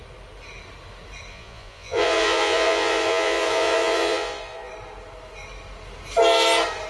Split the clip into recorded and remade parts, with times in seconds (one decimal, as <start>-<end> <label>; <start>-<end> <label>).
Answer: 0.0-1.3 recorded; 1.3-4.7 remade; 4.7-6.9 recorded